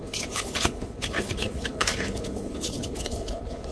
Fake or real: fake